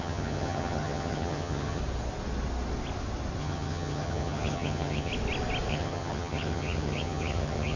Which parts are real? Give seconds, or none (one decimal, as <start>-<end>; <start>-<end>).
1.8-3.4; 5.1-5.7